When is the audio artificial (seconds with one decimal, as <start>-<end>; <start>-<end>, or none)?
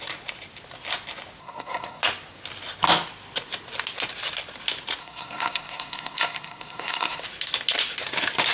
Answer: 1.4-2.0; 5.0-7.2